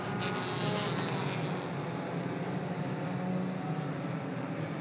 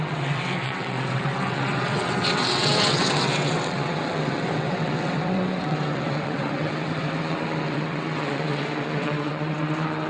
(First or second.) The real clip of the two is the first